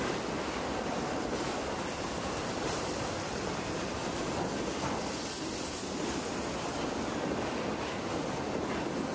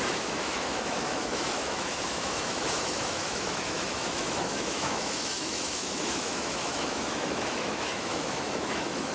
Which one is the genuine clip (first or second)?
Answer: first